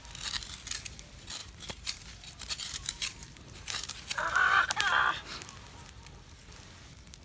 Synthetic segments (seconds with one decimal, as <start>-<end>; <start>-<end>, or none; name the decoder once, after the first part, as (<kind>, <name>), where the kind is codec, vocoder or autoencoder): 1.4-5.1 (vocoder, BigVGAN v2)